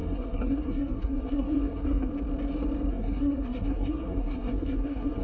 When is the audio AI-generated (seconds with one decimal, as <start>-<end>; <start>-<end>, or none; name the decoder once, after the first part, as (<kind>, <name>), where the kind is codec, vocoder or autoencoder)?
0.0-2.1 (codec, SNAC); 2.9-5.2